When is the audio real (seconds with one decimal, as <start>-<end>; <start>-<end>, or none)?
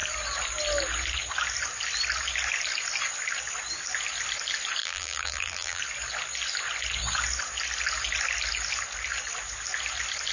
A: 0.0-4.8; 5.8-10.3